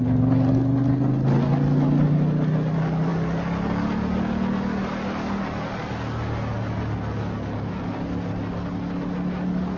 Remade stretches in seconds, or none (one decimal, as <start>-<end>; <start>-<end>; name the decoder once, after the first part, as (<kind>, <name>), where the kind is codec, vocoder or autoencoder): none